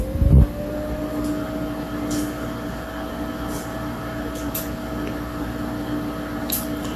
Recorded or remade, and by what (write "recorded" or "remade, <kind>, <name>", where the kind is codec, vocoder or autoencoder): recorded